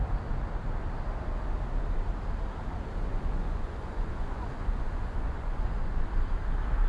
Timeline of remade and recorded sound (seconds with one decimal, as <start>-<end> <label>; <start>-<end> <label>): 0.0-3.1 recorded; 3.1-6.1 remade; 6.1-6.9 recorded